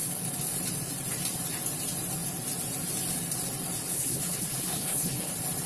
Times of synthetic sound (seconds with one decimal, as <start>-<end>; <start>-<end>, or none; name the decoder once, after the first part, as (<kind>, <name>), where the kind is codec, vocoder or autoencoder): 3.9-5.3 (codec, HILCodec)